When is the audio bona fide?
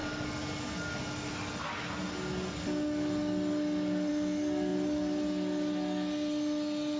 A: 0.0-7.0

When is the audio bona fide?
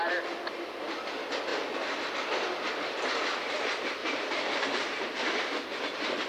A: 0.0-4.0; 5.3-6.3